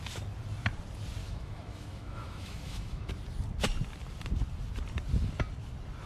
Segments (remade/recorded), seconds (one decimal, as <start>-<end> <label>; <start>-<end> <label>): 0.0-1.2 recorded; 1.2-3.1 remade; 3.1-6.1 recorded